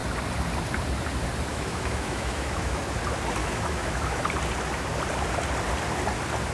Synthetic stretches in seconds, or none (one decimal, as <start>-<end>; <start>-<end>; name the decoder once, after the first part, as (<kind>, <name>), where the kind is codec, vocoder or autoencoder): 1.5-2.8 (autoencoder, DAC-VAE); 3.4-4.3